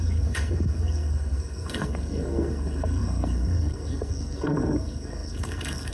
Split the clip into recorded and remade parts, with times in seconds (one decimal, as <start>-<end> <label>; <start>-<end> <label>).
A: 0.0-5.9 remade